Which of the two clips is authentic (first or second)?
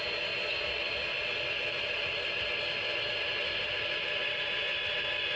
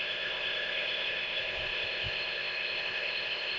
first